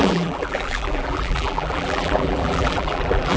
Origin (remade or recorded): remade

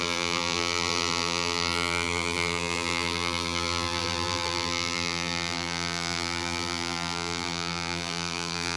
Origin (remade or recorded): remade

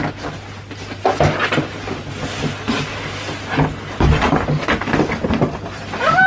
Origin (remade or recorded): recorded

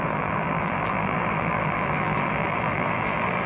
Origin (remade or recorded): remade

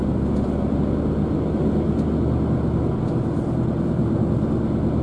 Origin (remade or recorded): recorded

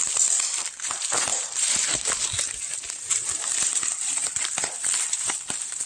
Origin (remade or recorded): remade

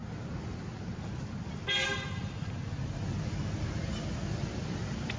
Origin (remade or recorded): recorded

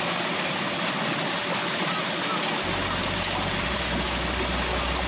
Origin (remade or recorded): recorded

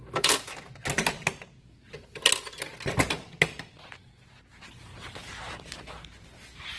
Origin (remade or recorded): recorded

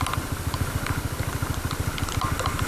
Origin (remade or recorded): remade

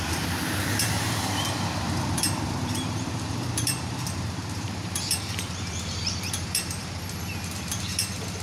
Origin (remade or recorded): remade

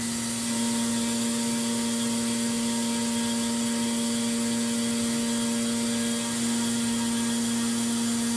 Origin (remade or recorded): recorded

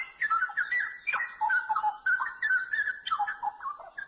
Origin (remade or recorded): recorded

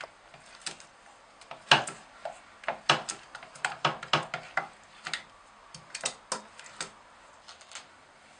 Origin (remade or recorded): recorded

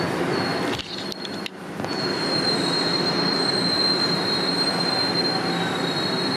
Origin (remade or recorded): recorded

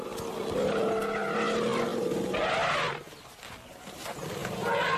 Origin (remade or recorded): recorded